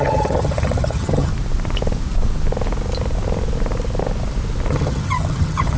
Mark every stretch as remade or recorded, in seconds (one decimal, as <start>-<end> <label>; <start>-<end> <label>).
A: 0.0-1.3 remade; 1.3-4.7 recorded; 4.7-5.8 remade